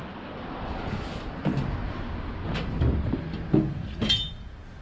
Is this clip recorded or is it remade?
recorded